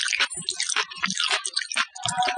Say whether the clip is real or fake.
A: real